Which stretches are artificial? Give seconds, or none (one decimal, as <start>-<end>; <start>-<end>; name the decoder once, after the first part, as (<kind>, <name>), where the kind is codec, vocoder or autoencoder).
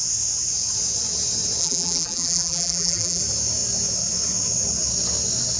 1.6-3.2 (vocoder, BigVGAN v2)